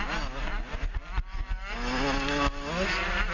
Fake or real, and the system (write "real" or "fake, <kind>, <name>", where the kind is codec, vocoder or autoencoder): real